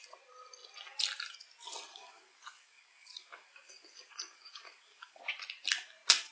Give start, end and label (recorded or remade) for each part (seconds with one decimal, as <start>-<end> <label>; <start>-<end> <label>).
0.0-1.9 recorded; 1.9-5.2 remade; 5.2-6.3 recorded